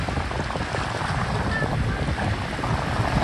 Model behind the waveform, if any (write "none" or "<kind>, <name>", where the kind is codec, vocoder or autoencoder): none